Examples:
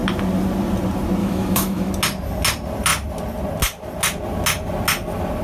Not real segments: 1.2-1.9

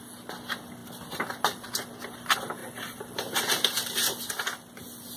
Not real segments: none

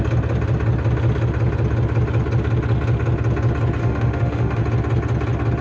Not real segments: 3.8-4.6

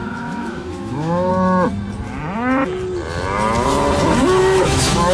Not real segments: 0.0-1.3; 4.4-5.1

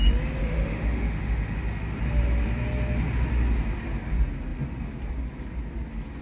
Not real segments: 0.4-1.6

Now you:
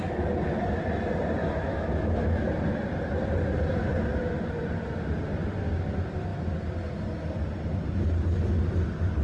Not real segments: 1.4-2.4

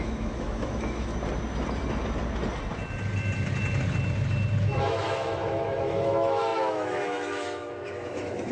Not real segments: 0.0-1.1; 4.6-8.5

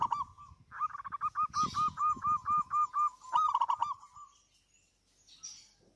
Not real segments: 2.0-2.9